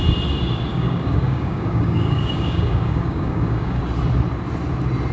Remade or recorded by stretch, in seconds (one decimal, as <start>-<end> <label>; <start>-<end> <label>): 0.0-0.7 recorded; 0.7-3.8 remade; 3.8-5.1 recorded